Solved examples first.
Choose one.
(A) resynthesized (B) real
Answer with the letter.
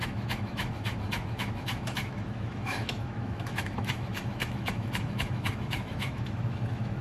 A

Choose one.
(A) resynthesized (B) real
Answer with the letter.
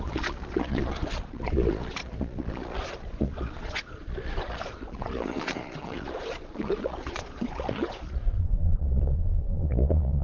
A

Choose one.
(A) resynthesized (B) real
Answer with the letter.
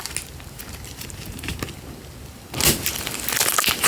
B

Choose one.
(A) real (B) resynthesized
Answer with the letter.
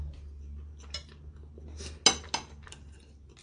A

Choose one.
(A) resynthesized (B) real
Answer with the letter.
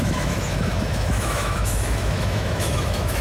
A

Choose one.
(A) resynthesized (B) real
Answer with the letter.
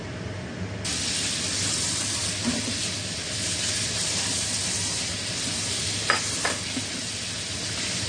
B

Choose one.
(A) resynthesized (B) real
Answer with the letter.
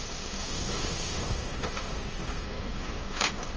A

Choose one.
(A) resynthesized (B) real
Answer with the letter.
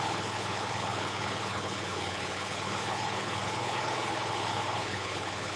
A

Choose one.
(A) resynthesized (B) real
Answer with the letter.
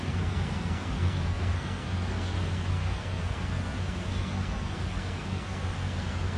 A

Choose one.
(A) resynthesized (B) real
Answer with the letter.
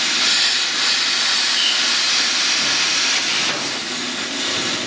B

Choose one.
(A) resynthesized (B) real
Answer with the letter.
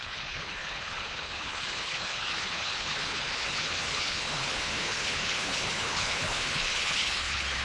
A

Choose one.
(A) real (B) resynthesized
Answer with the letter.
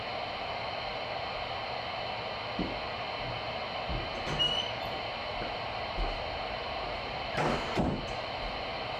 A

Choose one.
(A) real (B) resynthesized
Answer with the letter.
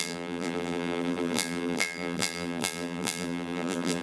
B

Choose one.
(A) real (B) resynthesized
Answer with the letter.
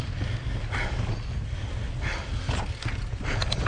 A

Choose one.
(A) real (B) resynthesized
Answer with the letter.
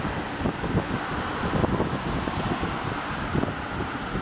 A